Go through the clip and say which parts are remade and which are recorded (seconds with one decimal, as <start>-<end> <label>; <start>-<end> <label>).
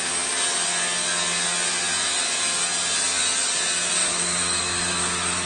0.0-4.0 recorded; 4.0-5.5 remade